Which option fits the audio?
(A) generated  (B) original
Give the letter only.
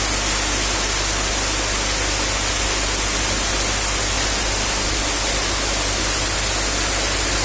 B